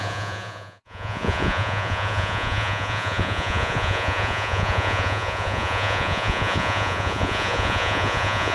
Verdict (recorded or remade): remade